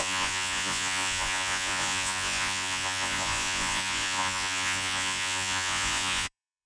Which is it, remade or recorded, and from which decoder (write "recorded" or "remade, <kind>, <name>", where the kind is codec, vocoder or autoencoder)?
remade, vocoder, Vocos